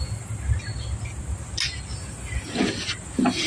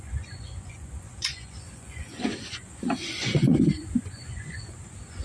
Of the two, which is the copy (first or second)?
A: second